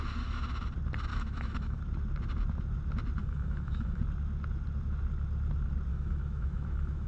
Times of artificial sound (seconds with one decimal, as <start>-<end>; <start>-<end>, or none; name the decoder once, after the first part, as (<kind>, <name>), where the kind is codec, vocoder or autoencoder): 1.1-1.8 (autoencoder, DAC-VAE); 3.2-4.0; 5.9-7.1